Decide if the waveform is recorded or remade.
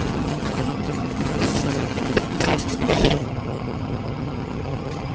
remade